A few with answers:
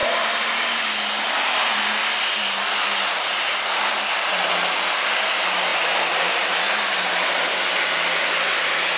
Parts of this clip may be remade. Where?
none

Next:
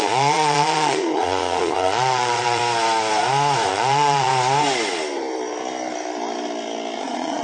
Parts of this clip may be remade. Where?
0.0-2.6 (vocoder, Vocos); 3.7-4.3; 7.0-7.4

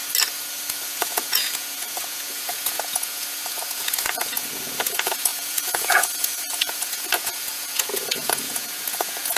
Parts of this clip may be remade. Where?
0.7-9.4 (vocoder, Vocos)

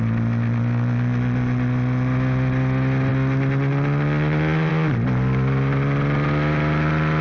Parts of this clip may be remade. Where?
none

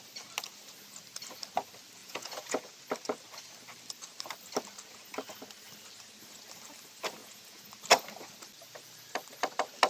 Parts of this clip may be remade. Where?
2.0-2.7 (vocoder, Vocos); 7.2-7.7

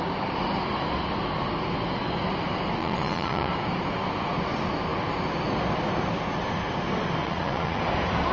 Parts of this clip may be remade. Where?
2.8-3.5 (vocoder, Vocos); 7.2-7.8